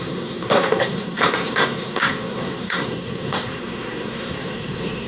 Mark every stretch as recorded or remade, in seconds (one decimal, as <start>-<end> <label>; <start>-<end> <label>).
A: 0.0-5.1 remade